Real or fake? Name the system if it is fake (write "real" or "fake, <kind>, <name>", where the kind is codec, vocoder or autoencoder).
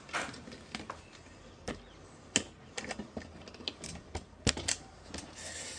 real